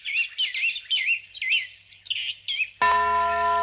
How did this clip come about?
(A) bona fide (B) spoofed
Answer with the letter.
A